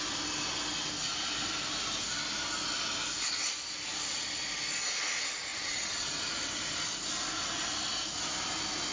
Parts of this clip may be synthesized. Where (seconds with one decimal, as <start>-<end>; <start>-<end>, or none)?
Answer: 5.5-6.1